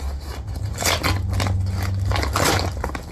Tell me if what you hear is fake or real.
real